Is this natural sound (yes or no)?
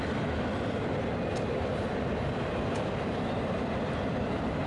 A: yes